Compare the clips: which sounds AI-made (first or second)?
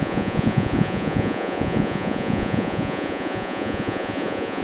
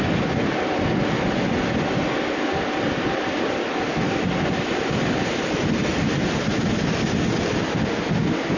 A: first